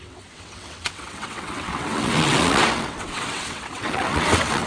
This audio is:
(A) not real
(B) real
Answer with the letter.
A